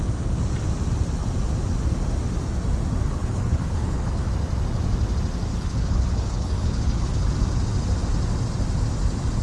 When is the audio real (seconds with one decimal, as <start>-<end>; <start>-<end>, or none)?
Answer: 0.0-3.2; 4.3-5.5; 7.3-9.4